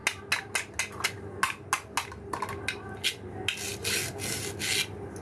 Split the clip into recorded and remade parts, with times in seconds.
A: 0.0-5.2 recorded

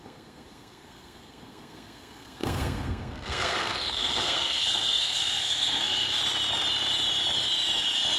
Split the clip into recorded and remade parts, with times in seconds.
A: 0.0-6.2 remade; 6.2-8.2 recorded

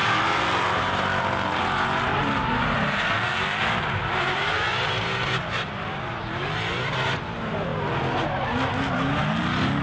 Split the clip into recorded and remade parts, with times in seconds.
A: 0.0-0.8 recorded; 0.8-2.1 remade; 2.1-3.6 recorded; 3.6-7.7 remade; 7.7-9.8 recorded

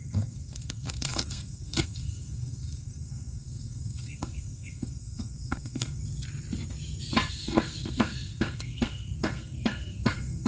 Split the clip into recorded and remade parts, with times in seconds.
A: 0.0-6.0 remade; 6.0-7.3 recorded; 7.3-10.5 remade